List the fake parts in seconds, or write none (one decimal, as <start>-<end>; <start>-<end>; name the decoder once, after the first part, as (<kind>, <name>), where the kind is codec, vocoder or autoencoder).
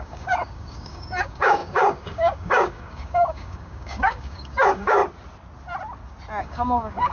0.0-5.0 (codec, DAC); 6.4-7.1